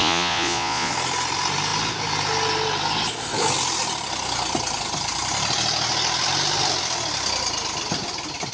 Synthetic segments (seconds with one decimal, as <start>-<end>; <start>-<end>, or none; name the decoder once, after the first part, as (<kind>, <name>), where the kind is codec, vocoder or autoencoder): 0.0-0.9 (vocoder, Vocos)